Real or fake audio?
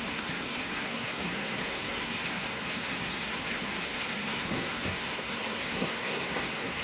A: fake